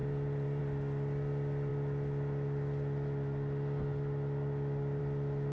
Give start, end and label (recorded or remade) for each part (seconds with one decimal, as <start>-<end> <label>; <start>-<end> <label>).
0.0-0.6 remade; 0.6-5.5 recorded